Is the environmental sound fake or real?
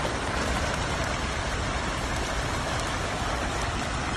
real